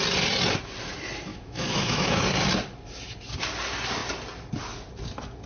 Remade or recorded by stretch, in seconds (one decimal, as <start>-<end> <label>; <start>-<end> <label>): 0.0-1.3 recorded; 1.3-2.2 remade; 2.2-5.5 recorded